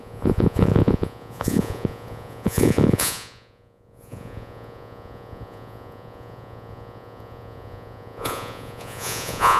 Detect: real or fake fake